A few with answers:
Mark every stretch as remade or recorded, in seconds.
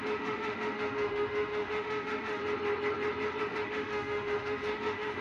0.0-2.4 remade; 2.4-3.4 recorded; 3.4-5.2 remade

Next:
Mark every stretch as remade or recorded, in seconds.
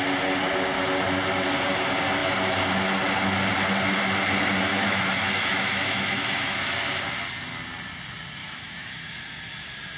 0.0-4.7 recorded; 4.7-7.0 remade; 7.0-8.4 recorded; 8.4-9.1 remade; 9.1-10.0 recorded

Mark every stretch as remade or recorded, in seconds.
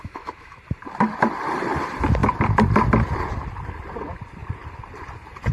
0.0-0.6 remade; 0.6-5.5 recorded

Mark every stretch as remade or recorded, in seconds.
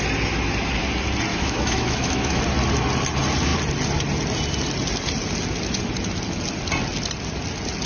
0.0-1.3 recorded; 1.3-2.4 remade; 2.4-7.9 recorded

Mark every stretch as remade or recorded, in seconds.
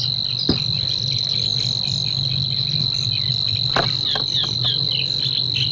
0.0-5.7 recorded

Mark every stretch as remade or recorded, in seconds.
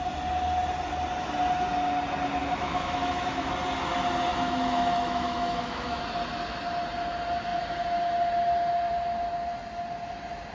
0.0-2.4 recorded; 2.4-3.5 remade; 3.5-4.3 recorded; 4.3-6.0 remade; 6.0-10.5 recorded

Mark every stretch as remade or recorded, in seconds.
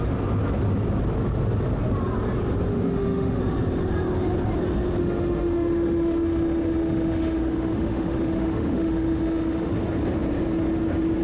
0.0-2.7 recorded; 2.7-3.4 remade; 3.4-5.0 recorded; 5.0-9.7 remade; 9.7-11.2 recorded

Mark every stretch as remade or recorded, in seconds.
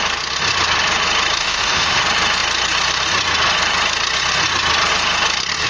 0.0-1.4 recorded; 1.4-2.0 remade; 2.0-5.7 recorded